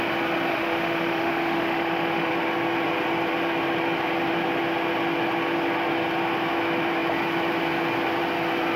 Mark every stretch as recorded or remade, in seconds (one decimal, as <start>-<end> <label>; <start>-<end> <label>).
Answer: 0.0-0.5 recorded; 0.5-2.3 remade; 2.3-8.8 recorded

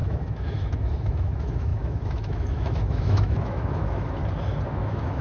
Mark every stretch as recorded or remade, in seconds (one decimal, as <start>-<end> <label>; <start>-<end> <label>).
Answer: 0.0-4.2 remade; 4.2-4.7 recorded; 4.7-5.2 remade